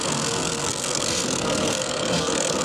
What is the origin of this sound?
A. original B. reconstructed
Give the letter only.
B